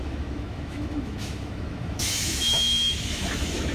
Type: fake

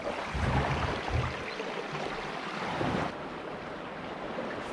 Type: real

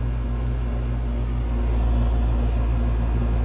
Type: real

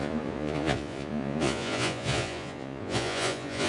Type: fake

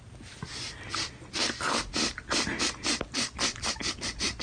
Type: real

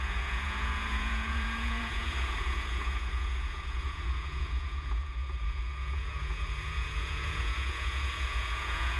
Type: fake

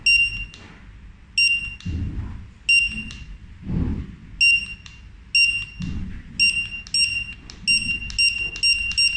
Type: real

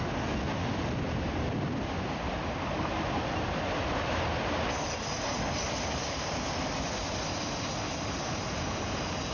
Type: real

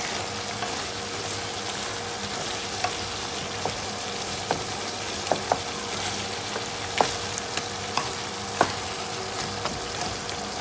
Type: real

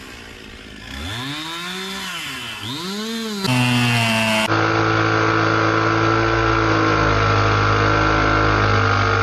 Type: real